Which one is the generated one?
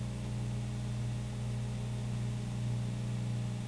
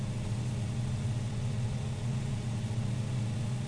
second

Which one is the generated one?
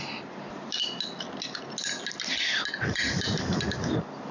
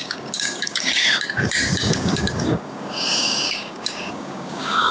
second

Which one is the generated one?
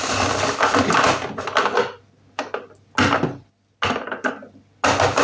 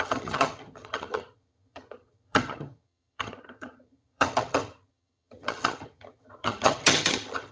second